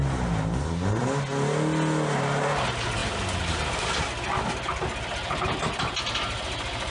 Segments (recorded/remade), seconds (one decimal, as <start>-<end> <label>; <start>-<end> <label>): 0.0-6.9 recorded